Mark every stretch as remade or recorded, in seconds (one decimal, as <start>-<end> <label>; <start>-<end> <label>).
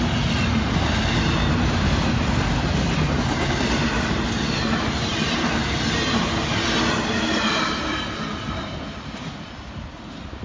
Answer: 0.0-10.4 recorded